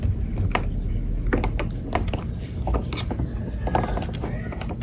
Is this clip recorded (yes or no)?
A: yes